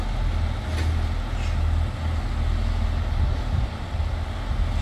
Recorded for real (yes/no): yes